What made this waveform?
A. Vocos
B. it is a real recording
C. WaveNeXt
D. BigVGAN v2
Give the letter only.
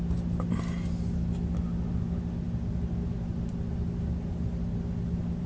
B